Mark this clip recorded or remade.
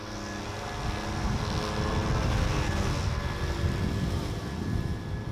recorded